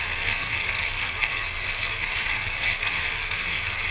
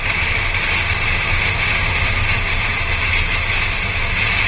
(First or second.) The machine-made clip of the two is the first